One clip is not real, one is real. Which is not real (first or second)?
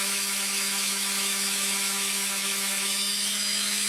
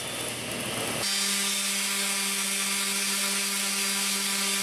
first